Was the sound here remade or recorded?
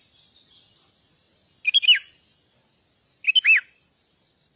recorded